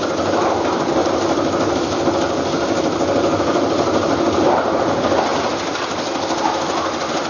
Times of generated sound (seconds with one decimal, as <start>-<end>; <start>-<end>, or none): none